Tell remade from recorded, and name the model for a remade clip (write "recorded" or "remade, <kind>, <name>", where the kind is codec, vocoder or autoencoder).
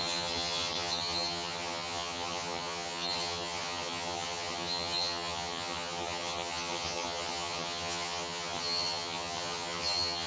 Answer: remade, vocoder, HiFi-GAN